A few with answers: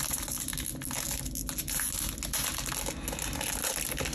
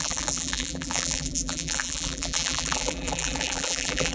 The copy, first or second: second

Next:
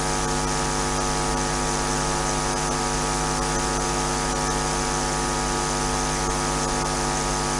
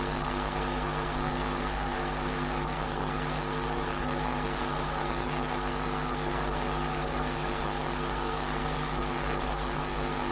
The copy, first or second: second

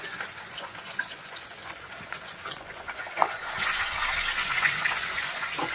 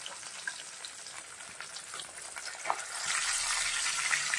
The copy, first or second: first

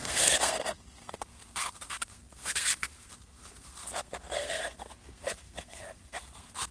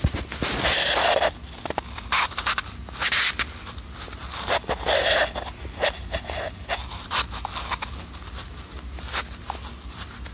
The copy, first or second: first